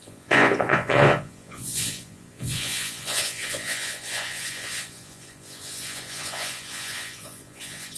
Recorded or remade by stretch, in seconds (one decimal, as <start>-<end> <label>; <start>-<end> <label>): 0.0-8.0 remade